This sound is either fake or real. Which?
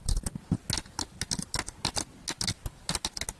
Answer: real